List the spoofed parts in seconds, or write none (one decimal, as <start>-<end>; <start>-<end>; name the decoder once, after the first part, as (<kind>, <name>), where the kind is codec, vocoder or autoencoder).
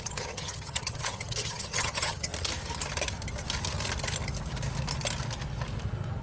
0.0-2.3 (vocoder, HiFi-GAN)